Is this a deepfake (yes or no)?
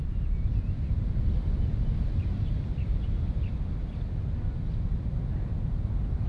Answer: no